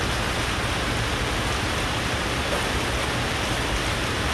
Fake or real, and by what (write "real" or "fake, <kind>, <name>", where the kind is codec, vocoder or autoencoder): real